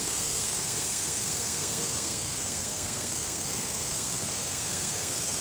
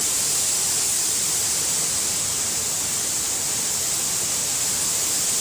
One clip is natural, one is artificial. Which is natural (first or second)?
second